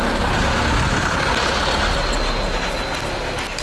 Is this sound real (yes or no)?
yes